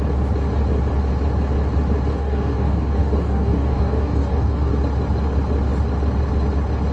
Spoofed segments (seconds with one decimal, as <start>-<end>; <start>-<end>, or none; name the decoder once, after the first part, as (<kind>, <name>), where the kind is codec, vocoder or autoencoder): 2.1-4.8 (codec, DAC)